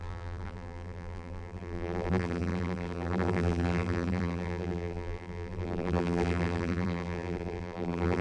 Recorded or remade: remade